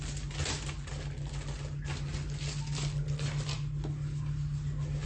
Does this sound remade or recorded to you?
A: recorded